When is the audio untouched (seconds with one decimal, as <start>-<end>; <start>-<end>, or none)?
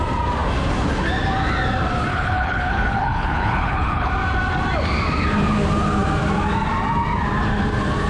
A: 0.0-2.1; 4.1-8.1